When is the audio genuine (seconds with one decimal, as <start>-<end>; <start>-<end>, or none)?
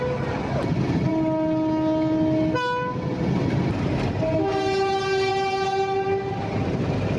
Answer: 0.0-7.2